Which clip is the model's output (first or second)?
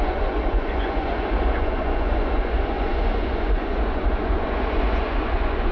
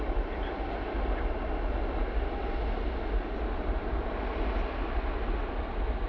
first